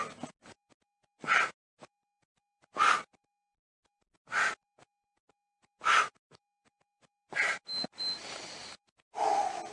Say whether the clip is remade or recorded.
recorded